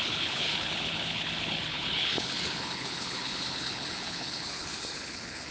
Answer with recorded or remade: remade